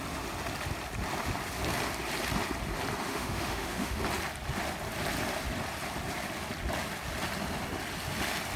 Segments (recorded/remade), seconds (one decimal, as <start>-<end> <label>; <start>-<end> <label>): 0.0-3.1 recorded; 3.1-4.0 remade; 4.0-8.6 recorded